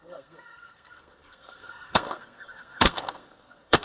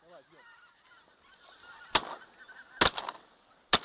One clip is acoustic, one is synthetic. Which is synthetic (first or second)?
first